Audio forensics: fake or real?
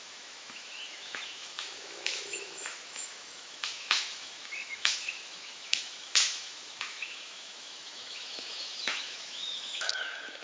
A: fake